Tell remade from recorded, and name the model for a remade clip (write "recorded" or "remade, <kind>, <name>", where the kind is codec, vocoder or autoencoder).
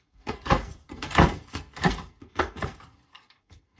remade, codec, SNAC